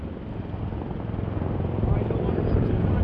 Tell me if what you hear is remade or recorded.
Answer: recorded